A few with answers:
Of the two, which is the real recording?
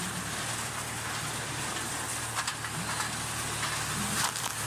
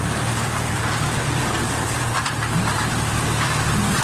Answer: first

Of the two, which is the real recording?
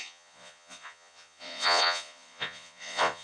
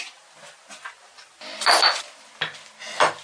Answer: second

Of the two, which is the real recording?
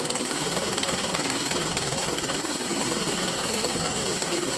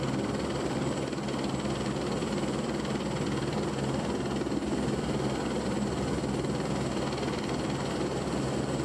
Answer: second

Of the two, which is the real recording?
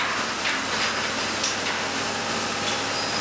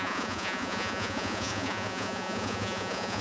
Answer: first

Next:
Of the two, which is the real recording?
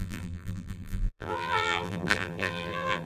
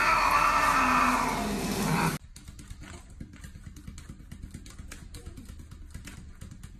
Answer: second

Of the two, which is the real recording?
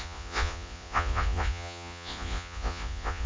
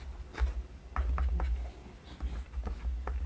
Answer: second